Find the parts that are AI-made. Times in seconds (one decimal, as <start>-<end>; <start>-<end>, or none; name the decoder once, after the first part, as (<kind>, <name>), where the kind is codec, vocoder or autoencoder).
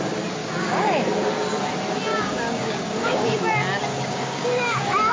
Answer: 0.4-1.1 (codec, DAC); 2.1-3.4; 3.9-5.1